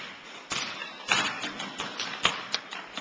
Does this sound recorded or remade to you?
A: remade